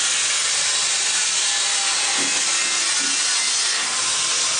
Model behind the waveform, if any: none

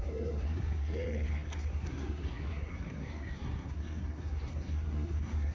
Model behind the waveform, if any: codec, SNAC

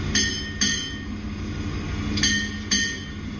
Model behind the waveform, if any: none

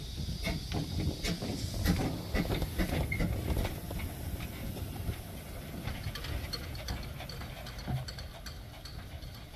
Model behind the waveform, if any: none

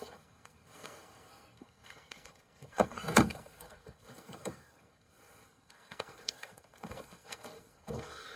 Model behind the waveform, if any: codec, SNAC